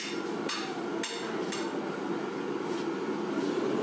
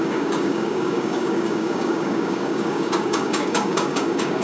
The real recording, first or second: first